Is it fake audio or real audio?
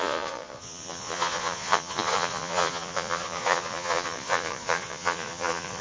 fake